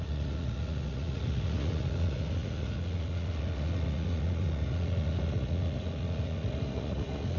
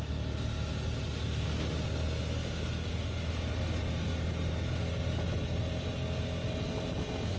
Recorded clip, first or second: second